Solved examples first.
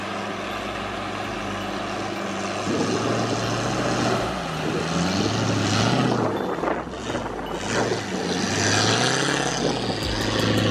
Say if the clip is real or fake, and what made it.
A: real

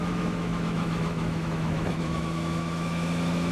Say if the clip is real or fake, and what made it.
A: fake, autoencoder, DAC-VAE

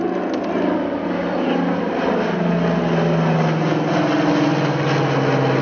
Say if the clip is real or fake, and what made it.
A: real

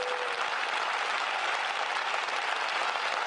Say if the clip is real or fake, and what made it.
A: real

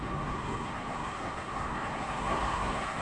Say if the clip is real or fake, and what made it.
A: fake, codec, SNAC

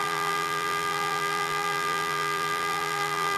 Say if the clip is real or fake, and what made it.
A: fake, vocoder, BigVGAN v2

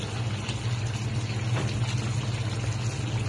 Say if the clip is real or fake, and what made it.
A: real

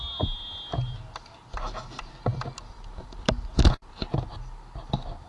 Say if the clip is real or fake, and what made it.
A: real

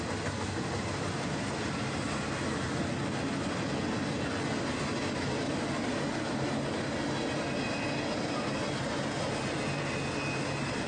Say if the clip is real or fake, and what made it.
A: real